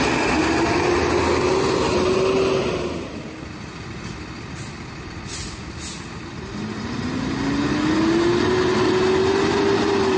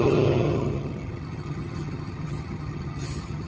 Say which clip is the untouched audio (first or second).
first